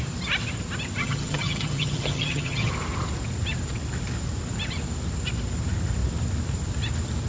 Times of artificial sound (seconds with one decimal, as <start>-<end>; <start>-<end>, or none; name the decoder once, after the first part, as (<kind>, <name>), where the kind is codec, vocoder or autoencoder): 1.0-2.7 (vocoder, HiFi-GAN)